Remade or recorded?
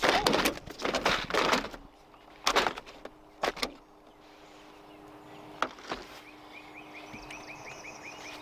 recorded